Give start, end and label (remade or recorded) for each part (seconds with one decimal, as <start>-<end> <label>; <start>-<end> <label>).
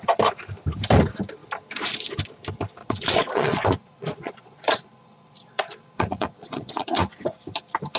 0.0-2.8 recorded; 2.8-7.1 remade; 7.1-8.0 recorded